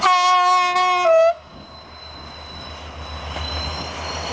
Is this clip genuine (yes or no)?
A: yes